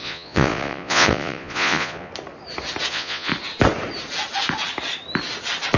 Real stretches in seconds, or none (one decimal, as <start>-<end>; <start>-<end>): 2.1-2.9; 3.3-5.8